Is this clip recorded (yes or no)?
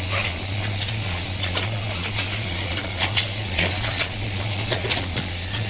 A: no